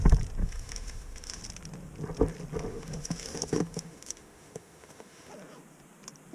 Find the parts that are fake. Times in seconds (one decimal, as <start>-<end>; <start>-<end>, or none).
0.4-1.4; 2.7-5.3